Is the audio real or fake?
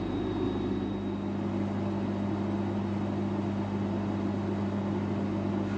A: real